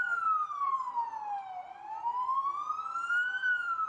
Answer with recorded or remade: recorded